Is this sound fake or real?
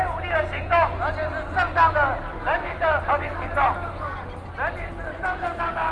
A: real